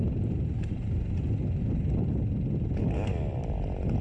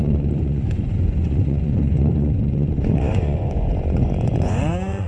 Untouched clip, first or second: first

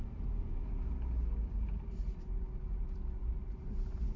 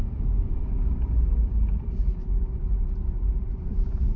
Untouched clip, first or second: first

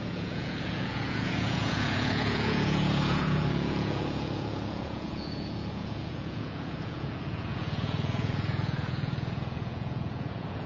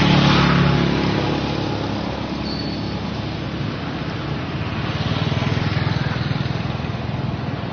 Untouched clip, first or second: second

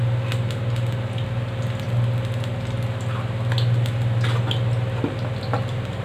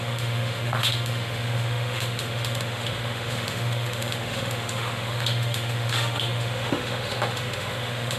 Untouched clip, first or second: first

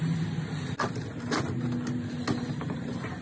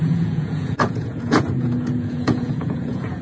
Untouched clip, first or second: first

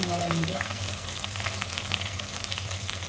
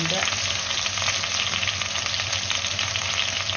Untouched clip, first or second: second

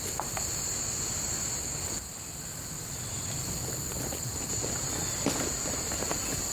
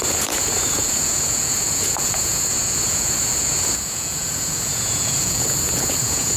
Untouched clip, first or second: first